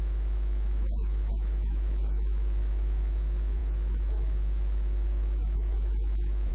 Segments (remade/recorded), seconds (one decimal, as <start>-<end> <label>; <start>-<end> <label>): 0.0-6.5 remade